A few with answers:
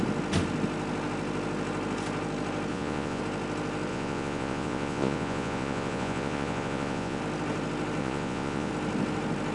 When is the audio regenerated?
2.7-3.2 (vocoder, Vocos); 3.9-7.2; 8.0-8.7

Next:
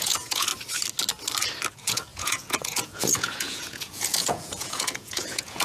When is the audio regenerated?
0.0-0.5 (vocoder, Vocos); 1.7-5.6

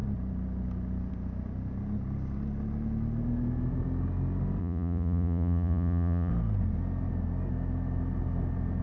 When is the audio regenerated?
4.6-6.3 (vocoder, Vocos)

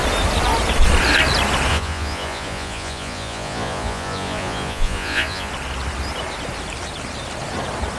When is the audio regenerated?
1.7-5.5 (vocoder, Vocos)

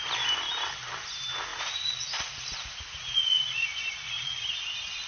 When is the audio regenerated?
1.5-4.6 (vocoder, Vocos)

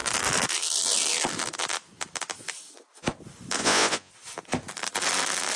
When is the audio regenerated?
3.6-4.1 (vocoder, Vocos)